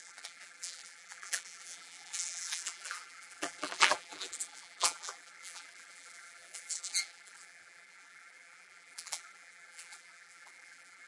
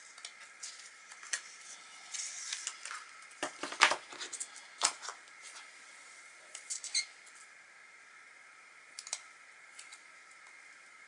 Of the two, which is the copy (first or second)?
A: first